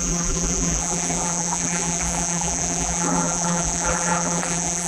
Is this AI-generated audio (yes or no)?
yes